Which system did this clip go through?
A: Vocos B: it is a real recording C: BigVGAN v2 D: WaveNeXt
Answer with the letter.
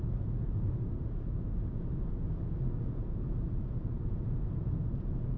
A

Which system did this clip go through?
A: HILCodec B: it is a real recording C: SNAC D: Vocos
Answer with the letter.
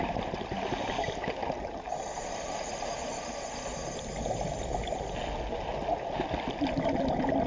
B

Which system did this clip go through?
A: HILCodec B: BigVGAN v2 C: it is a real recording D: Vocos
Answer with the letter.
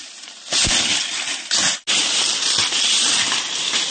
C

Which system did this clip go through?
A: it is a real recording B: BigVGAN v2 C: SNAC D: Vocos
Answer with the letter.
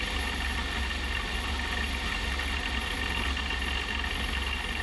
A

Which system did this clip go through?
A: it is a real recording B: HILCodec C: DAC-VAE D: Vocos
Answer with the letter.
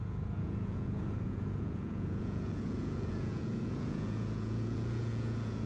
D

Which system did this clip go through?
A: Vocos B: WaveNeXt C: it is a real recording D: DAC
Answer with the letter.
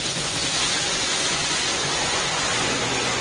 A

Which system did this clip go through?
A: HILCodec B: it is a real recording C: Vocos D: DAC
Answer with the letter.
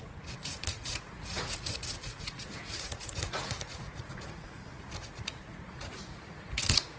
C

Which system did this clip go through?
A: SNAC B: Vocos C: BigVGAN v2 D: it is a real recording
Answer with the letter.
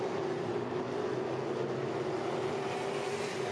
D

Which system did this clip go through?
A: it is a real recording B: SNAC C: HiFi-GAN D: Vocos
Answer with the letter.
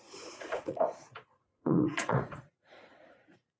D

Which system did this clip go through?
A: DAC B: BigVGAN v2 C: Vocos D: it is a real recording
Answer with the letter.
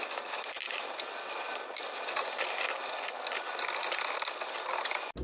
D